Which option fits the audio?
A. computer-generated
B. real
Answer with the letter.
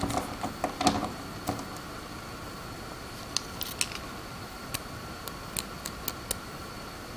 B